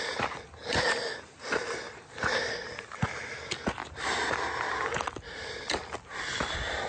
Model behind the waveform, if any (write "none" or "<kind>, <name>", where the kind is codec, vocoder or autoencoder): none